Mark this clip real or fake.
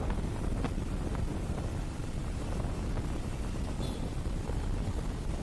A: real